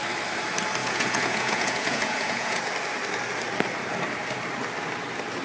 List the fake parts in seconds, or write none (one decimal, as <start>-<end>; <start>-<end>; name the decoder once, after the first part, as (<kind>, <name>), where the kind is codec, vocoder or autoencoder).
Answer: 0.8-2.6 (vocoder, Vocos)